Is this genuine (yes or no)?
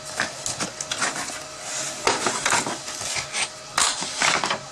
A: yes